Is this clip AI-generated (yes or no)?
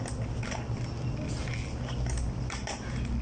no